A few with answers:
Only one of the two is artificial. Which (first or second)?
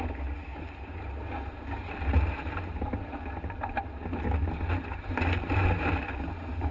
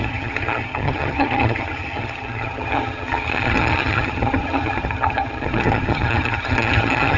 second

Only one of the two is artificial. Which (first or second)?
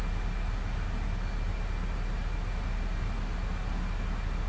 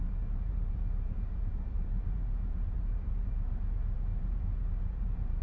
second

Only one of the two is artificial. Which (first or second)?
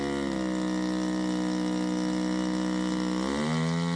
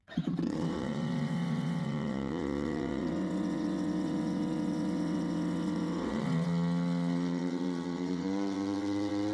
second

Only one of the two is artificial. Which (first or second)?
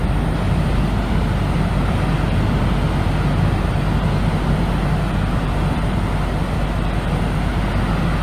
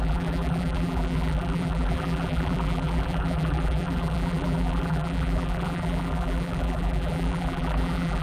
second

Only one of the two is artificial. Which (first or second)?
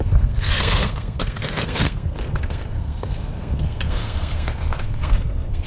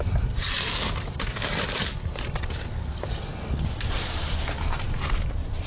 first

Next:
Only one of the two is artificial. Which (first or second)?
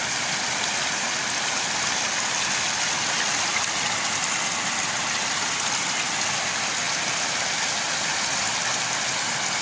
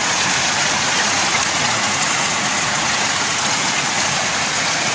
second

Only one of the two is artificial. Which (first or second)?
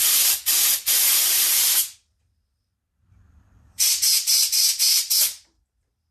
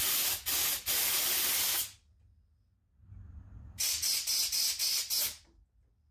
first